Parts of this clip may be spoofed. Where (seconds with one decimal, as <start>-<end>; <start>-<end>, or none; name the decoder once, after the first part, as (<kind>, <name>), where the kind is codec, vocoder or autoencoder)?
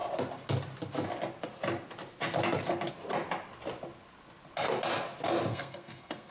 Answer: 5.5-6.3 (codec, SNAC)